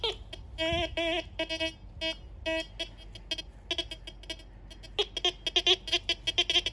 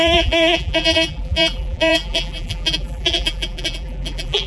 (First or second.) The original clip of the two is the first